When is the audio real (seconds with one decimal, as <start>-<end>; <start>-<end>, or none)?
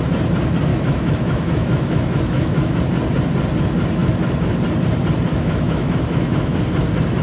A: 0.0-0.7; 2.8-5.3; 6.6-7.2